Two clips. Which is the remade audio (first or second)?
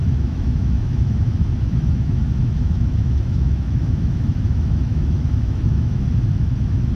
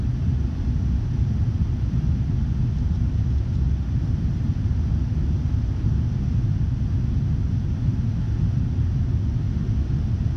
first